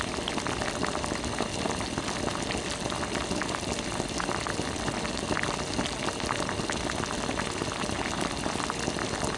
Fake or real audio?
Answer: real